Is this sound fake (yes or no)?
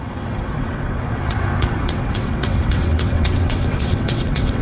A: yes